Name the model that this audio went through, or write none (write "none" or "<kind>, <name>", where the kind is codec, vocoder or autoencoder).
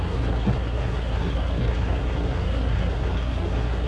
codec, SNAC